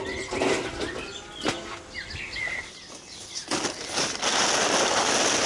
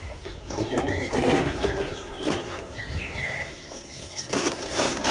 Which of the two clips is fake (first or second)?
second